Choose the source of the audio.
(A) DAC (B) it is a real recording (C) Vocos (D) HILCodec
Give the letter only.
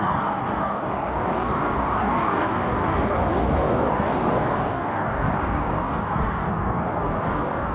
A